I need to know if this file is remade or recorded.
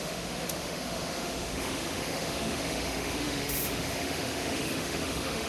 remade